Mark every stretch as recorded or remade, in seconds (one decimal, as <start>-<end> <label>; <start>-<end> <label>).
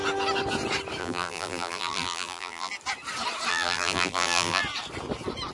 0.0-1.0 recorded; 1.0-2.7 remade; 2.7-3.5 recorded; 3.5-4.6 remade; 4.6-5.5 recorded